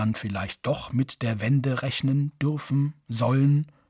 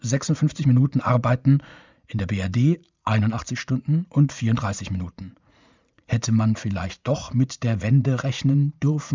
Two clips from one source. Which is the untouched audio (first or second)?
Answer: first